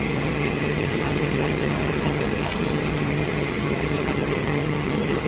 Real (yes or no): no